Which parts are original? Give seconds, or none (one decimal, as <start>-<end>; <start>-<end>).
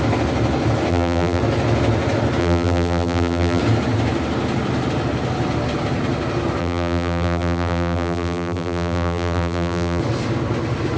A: 0.0-0.9; 1.4-2.4; 3.6-6.6; 10.0-11.0